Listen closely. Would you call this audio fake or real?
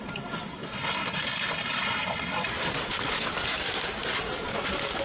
real